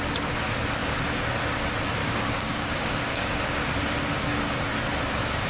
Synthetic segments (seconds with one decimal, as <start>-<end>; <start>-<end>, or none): 2.0-3.4